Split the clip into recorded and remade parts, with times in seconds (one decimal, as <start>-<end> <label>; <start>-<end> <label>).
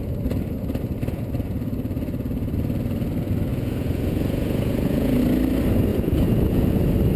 0.0-3.5 recorded; 3.5-5.2 remade; 5.2-5.9 recorded; 5.9-6.8 remade; 6.8-7.2 recorded